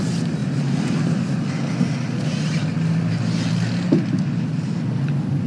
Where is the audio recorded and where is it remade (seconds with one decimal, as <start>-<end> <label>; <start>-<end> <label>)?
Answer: 0.0-5.5 recorded